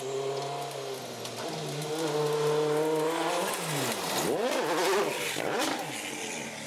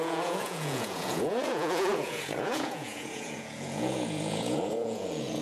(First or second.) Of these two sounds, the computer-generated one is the second